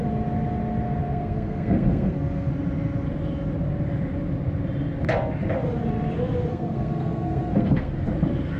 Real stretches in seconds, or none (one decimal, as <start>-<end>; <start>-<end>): 0.0-1.0; 2.5-6.5; 7.9-8.6